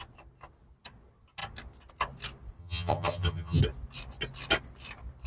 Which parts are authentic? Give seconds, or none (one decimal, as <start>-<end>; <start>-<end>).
0.0-2.6; 3.6-5.3